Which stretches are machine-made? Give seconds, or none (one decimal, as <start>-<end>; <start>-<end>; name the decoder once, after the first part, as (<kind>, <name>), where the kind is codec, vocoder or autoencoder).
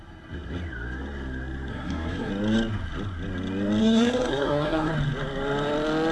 1.7-2.3 (codec, SNAC); 3.8-4.9